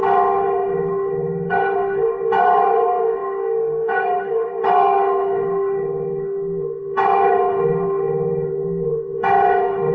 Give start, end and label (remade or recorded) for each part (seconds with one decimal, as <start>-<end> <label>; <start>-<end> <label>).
0.0-9.9 remade